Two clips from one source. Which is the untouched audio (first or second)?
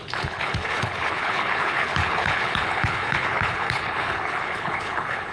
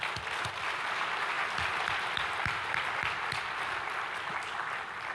second